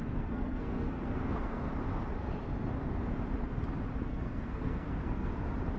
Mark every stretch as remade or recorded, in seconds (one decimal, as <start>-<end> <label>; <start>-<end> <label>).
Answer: 0.0-1.7 remade; 1.7-4.1 recorded; 4.1-5.3 remade; 5.3-5.8 recorded